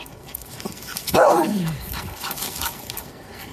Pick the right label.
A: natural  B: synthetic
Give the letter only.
B